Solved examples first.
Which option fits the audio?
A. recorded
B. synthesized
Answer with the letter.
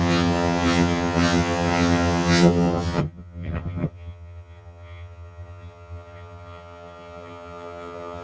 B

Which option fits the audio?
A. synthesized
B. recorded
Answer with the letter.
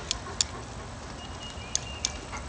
B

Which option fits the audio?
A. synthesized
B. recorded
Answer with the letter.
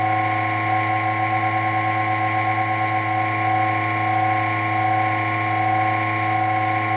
B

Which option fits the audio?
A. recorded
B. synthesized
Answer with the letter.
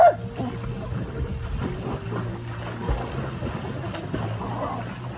A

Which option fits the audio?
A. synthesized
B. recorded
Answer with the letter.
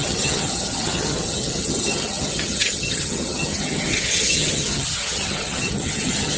A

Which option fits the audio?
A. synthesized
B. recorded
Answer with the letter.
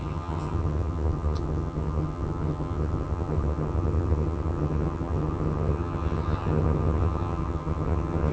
A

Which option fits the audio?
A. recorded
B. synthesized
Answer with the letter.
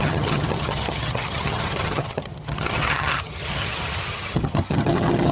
B